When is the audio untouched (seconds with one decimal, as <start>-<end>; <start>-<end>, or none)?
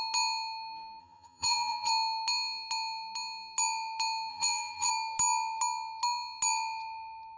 0.0-1.0; 1.9-4.3; 4.9-7.4